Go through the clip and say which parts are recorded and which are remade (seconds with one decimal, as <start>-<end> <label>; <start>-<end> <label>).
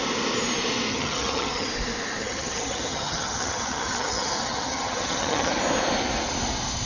0.0-0.9 recorded; 0.9-1.7 remade; 1.7-2.2 recorded; 2.2-5.5 remade; 5.5-6.9 recorded